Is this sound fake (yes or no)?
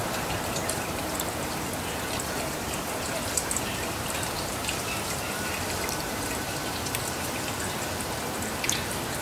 yes